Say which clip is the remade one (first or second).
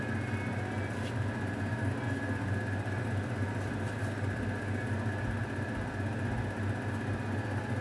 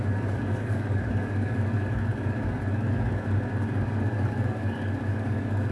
second